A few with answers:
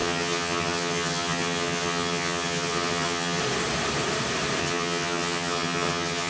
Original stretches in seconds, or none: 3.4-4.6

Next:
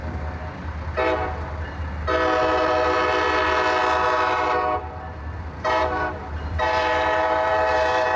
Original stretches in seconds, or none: 0.0-4.3

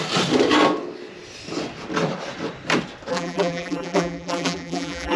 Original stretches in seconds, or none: 0.0-3.1

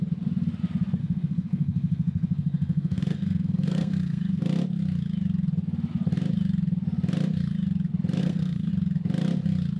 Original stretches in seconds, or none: 0.0-1.0; 4.4-8.2; 8.7-9.8